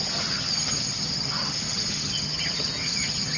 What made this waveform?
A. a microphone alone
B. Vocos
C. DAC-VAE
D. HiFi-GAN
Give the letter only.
D